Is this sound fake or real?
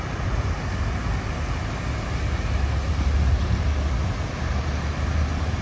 real